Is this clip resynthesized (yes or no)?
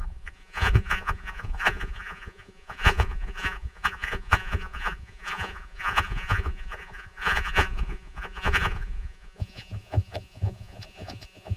yes